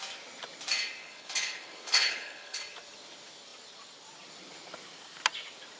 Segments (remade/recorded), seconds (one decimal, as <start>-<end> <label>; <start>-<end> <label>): 0.0-1.0 recorded; 1.0-2.6 remade; 2.6-5.8 recorded